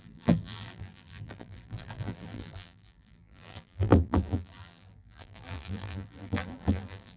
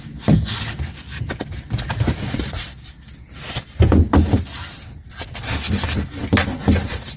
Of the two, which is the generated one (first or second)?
first